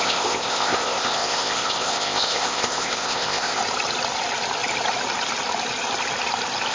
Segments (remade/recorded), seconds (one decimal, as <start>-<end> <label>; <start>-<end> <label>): 0.0-3.6 remade; 3.6-6.7 recorded